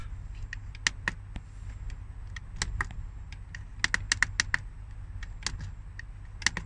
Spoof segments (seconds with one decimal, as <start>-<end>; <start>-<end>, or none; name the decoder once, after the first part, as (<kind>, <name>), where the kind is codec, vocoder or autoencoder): none

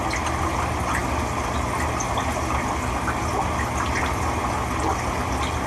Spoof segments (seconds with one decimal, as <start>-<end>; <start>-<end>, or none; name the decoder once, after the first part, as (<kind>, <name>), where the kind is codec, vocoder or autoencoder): none